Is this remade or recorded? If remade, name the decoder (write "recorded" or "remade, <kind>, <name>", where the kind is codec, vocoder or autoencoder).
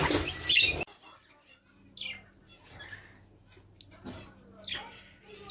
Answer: recorded